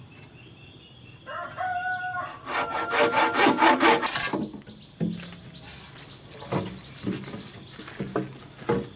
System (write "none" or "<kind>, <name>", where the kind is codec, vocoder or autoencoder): none